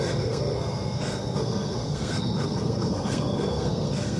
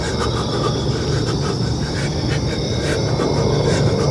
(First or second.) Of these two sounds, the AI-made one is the first